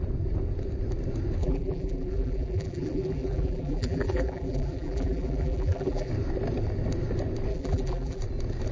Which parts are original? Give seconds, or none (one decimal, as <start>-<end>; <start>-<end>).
0.0-1.4; 6.1-7.5; 8.2-8.7